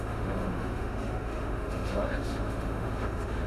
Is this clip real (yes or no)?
no